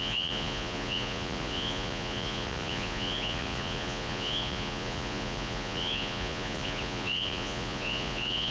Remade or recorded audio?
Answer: remade